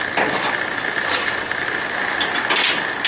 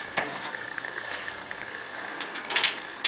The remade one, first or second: second